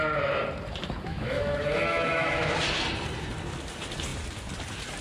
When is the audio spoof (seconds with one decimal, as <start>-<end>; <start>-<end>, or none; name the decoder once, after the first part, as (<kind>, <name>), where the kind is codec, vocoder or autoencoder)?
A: 1.1-2.6 (autoencoder, DAC-VAE)